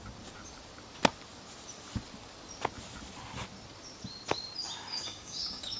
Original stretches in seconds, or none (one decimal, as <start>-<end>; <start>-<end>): 0.0-4.9